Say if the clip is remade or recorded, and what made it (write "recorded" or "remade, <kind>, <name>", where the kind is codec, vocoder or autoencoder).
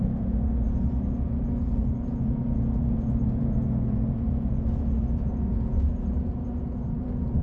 remade, vocoder, Vocos